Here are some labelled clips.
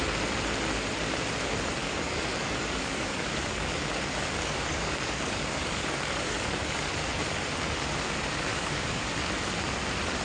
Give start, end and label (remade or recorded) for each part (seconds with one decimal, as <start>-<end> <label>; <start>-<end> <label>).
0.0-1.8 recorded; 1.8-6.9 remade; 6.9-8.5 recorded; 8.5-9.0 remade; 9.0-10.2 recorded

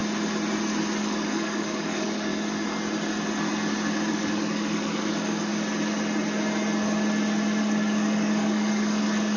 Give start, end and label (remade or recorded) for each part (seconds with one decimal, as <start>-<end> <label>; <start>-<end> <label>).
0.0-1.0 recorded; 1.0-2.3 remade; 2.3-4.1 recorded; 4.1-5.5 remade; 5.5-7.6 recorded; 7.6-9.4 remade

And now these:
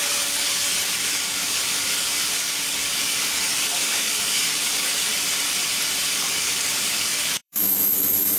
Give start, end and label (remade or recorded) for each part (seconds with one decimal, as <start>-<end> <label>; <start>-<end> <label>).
0.0-5.1 remade; 5.1-6.1 recorded; 6.1-8.4 remade